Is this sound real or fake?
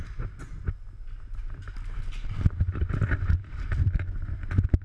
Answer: real